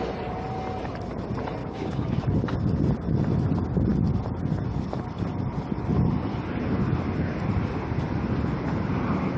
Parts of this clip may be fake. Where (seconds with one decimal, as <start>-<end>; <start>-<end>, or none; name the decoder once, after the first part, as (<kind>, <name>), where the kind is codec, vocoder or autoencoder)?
1.6-2.2 (codec, DAC)